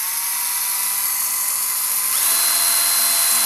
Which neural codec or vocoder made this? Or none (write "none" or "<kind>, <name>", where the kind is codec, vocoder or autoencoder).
none